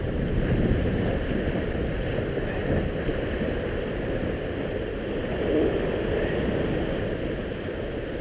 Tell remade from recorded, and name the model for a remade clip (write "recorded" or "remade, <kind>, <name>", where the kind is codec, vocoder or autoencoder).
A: recorded